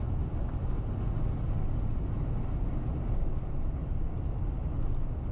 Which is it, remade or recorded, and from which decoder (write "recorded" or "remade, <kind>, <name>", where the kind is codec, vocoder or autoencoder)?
recorded